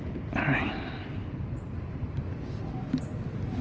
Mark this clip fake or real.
real